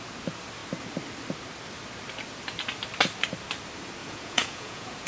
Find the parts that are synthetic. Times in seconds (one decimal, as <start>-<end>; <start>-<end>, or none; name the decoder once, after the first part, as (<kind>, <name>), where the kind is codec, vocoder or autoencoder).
4.0-5.1 (vocoder, Vocos)